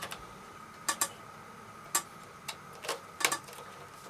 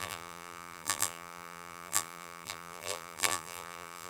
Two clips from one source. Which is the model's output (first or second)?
second